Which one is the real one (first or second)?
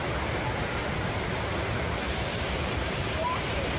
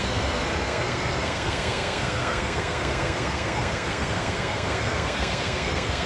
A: first